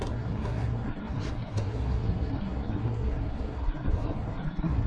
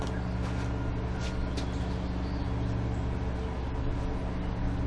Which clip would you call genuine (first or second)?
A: second